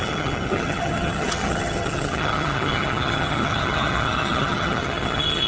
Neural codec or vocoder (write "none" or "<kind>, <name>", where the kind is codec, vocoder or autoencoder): vocoder, HiFi-GAN